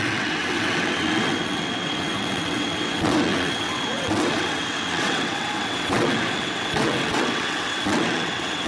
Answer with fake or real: fake